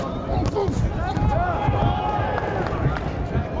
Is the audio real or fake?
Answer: real